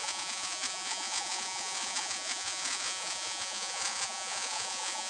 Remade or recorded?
remade